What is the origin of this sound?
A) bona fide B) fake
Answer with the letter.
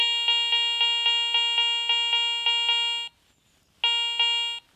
A